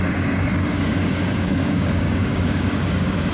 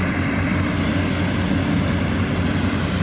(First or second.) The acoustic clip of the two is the second